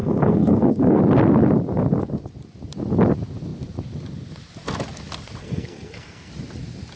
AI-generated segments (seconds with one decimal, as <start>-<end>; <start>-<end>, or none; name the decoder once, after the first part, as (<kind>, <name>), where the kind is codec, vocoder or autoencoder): 0.0-1.0 (codec, SNAC); 5.4-6.3